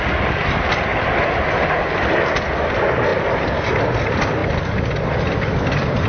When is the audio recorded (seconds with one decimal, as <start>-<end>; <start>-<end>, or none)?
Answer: 0.0-6.1